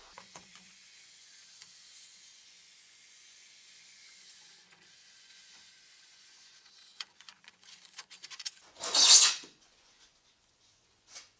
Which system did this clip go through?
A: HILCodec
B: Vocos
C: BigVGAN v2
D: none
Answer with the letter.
B